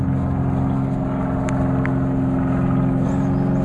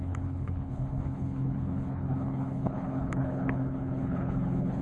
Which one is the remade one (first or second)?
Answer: second